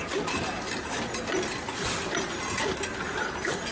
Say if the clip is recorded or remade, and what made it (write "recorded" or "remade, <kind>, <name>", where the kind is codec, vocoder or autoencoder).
recorded